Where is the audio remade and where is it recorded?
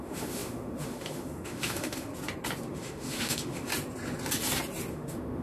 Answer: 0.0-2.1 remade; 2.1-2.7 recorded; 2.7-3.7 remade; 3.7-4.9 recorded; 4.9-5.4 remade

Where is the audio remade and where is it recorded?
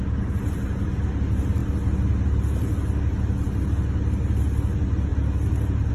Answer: 0.0-5.9 recorded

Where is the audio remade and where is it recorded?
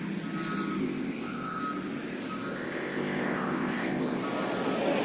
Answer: 0.0-0.8 recorded; 0.8-1.6 remade; 1.6-2.5 recorded; 2.5-4.2 remade; 4.2-5.0 recorded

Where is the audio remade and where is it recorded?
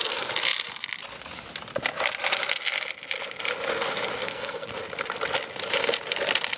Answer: 0.0-4.2 recorded; 4.2-4.7 remade; 4.7-6.6 recorded